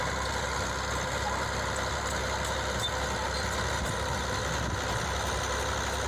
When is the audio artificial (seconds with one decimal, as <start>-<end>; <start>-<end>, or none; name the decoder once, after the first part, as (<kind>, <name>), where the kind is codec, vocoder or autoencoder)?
none